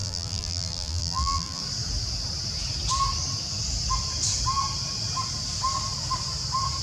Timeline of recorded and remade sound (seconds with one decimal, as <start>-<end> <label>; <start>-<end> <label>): 0.0-1.6 remade; 1.6-6.8 recorded